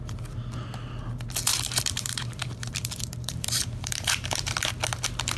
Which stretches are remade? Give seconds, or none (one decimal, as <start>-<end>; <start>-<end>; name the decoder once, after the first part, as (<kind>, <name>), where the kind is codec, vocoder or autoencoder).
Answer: 1.5-4.7 (vocoder, BigVGAN v2)